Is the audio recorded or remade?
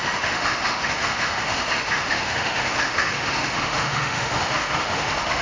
remade